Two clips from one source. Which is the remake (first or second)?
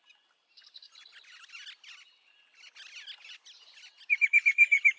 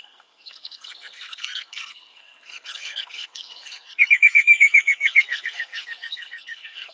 second